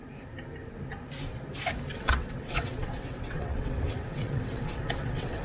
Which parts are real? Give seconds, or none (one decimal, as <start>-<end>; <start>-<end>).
0.0-1.9